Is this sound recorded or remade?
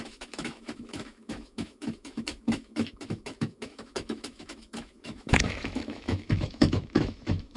remade